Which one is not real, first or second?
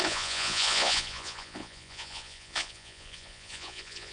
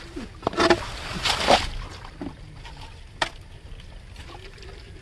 first